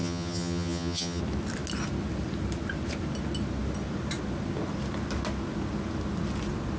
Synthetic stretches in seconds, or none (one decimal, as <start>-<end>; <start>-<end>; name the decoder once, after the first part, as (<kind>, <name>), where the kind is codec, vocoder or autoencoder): 0.0-1.2 (vocoder, HiFi-GAN)